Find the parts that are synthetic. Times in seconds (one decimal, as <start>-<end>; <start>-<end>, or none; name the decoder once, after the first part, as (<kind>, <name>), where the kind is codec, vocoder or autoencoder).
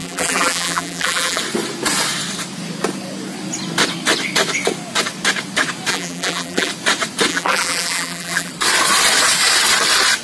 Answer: 0.0-1.4 (vocoder, BigVGAN v2); 5.9-6.7; 7.3-8.5